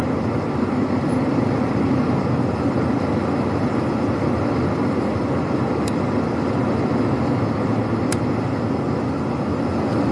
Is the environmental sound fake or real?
real